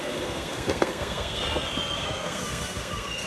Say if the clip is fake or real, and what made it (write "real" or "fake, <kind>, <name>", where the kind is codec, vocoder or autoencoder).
fake, codec, SNAC